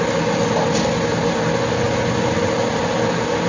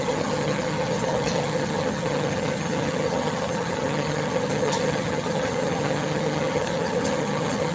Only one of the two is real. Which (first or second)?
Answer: first